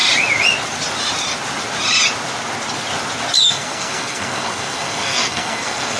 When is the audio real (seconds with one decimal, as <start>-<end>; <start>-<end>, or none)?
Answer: 0.0-3.4